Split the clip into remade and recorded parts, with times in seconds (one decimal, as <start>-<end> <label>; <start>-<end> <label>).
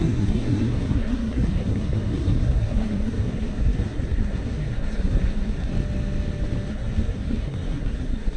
0.0-5.7 remade; 5.7-6.7 recorded; 6.7-8.4 remade